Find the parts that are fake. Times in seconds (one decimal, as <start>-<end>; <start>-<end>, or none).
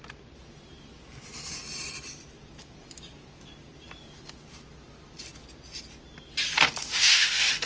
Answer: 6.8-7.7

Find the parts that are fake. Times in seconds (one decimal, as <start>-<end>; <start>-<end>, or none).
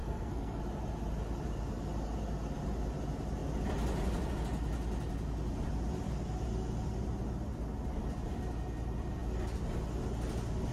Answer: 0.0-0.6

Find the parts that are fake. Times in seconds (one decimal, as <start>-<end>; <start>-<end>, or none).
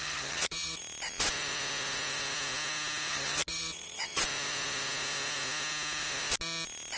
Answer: 0.0-0.8; 3.1-4.2